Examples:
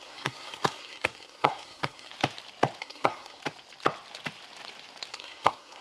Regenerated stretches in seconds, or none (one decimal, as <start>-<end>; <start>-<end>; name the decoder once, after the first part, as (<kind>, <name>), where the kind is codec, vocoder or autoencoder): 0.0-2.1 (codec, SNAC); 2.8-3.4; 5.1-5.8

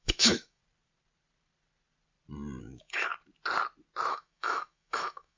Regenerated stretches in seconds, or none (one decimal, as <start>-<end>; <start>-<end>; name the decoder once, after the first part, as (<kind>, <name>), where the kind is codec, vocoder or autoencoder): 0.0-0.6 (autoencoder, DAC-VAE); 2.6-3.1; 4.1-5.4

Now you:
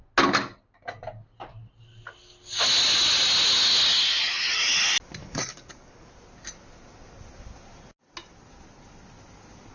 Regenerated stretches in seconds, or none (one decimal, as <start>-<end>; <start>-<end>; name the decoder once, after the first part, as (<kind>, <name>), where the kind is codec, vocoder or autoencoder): 5.2-6.1 (codec, DAC)